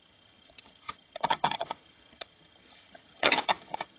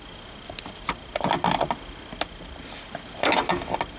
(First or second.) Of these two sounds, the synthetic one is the first